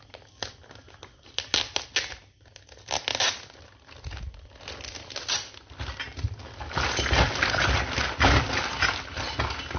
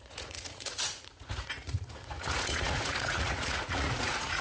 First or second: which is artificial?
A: second